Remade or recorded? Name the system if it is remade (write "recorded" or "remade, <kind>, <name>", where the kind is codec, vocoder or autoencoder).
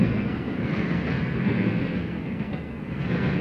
remade, codec, SNAC